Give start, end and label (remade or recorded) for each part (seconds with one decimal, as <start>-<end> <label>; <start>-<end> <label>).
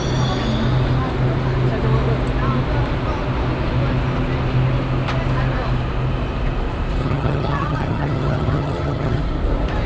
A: 0.0-7.0 recorded; 7.0-9.2 remade; 9.2-9.9 recorded